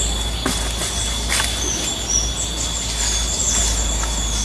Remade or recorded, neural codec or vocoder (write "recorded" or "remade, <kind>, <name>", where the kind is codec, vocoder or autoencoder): recorded